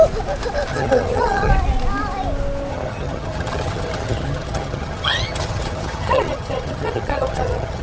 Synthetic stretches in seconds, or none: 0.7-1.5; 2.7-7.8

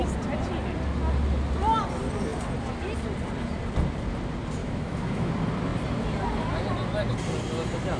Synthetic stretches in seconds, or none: 4.6-5.3

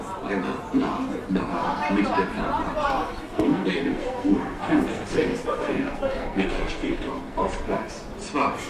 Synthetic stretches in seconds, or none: 1.3-1.8; 3.0-7.9